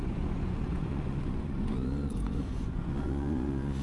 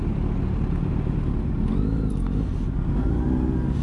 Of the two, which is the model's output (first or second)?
first